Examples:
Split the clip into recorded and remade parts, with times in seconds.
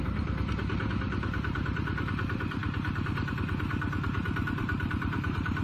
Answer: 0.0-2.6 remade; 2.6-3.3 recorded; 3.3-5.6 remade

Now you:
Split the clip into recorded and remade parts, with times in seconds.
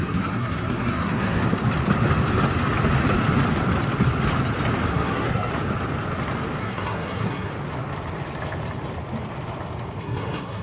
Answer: 0.0-1.4 remade; 1.4-4.9 recorded; 4.9-5.5 remade; 5.5-6.6 recorded; 6.6-7.5 remade; 7.5-10.0 recorded; 10.0-10.6 remade